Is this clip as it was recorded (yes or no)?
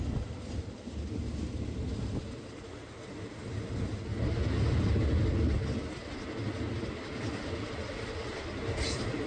yes